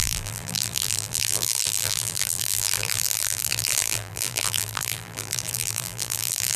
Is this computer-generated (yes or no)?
yes